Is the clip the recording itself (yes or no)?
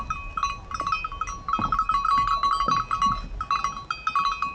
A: yes